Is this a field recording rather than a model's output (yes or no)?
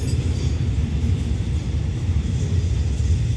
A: yes